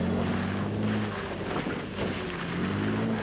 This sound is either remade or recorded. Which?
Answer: recorded